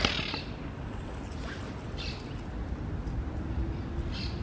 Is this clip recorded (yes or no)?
yes